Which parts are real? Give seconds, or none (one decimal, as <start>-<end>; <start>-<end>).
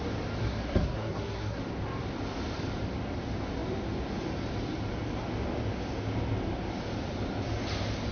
0.0-0.4; 1.6-8.1